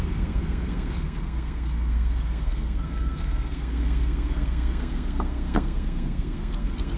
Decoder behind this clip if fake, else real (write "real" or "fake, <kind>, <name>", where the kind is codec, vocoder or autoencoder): fake, codec, SNAC